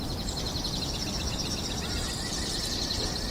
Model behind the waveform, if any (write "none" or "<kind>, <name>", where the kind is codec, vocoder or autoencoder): vocoder, BigVGAN v2